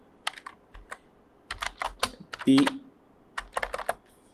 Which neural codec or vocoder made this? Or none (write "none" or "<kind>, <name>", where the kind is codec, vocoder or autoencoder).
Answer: none